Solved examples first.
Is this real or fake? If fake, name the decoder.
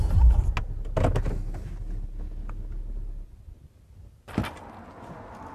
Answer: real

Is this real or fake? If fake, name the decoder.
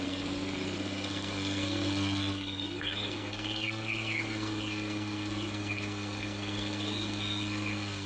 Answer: fake, codec, SNAC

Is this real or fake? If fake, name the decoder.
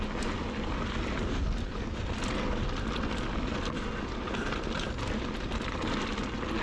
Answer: real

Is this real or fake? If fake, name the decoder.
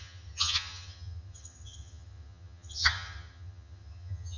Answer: fake, vocoder, HiFi-GAN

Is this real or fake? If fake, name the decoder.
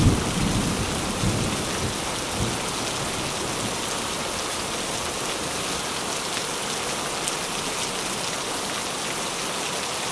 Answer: real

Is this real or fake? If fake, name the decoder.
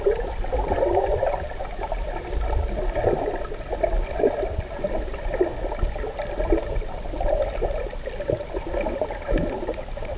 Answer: real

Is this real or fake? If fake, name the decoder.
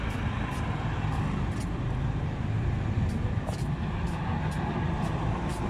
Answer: fake, vocoder, BigVGAN v2